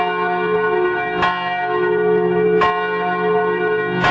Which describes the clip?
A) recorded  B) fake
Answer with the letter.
A